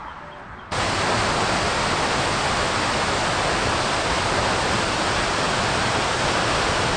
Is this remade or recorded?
recorded